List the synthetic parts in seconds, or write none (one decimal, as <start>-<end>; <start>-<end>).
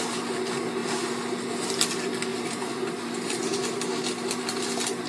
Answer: 2.3-4.6